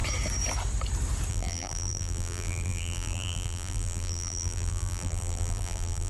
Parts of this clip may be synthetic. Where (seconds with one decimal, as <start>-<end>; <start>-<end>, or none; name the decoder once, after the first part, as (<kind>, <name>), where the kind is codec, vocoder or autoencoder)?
1.3-6.1 (vocoder, BigVGAN v2)